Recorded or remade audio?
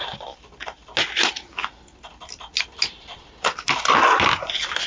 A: recorded